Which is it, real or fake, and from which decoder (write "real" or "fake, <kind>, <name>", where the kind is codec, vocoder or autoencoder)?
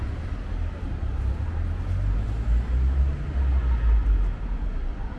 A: real